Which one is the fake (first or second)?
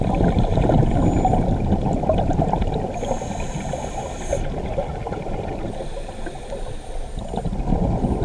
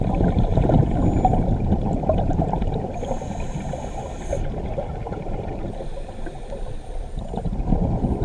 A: second